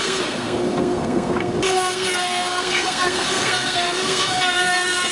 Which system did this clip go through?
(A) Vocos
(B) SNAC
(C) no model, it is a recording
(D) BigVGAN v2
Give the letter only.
B